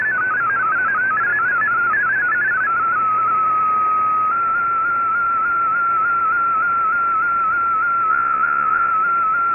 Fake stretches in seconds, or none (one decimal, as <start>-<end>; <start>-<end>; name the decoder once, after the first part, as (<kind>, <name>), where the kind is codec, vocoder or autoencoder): 8.1-8.9 (vocoder, Vocos)